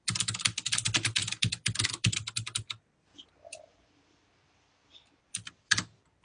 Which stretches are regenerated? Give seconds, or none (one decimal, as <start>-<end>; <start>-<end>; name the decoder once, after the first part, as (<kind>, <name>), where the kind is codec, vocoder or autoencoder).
0.0-6.2 (vocoder, BigVGAN v2)